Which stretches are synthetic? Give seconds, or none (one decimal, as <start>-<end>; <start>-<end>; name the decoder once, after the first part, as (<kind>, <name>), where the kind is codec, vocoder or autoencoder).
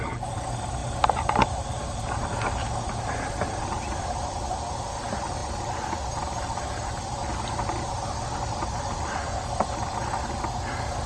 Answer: none